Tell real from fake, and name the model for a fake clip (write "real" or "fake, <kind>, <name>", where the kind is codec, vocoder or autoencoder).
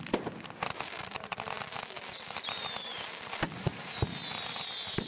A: real